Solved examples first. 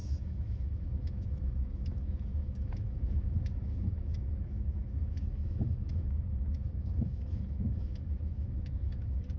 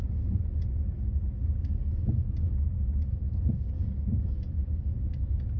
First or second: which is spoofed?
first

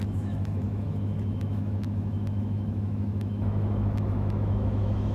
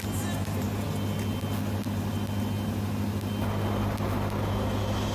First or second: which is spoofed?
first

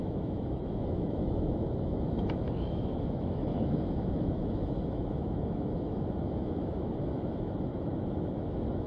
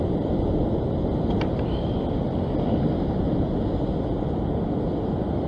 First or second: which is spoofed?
first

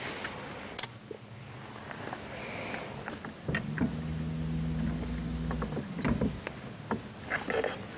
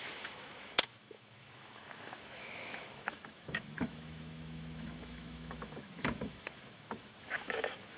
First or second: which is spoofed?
second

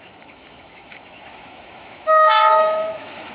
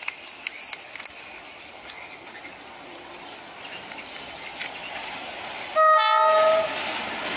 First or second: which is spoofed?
first